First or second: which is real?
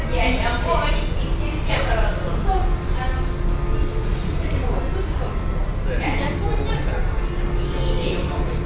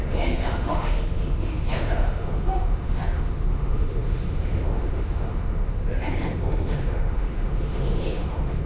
first